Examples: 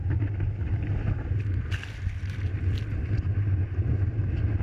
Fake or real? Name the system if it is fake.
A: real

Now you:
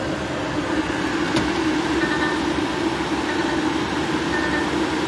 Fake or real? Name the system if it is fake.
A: real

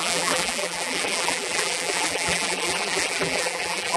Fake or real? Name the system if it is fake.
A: fake, vocoder, BigVGAN v2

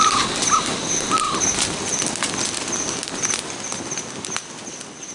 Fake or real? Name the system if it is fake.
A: real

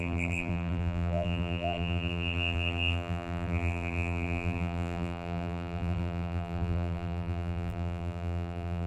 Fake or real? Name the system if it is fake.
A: fake, vocoder, BigVGAN v2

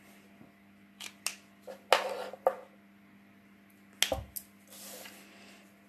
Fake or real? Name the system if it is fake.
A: real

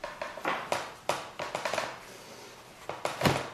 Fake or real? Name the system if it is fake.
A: real